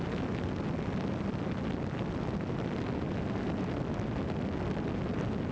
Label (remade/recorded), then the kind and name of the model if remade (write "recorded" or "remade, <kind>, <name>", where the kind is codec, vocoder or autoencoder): recorded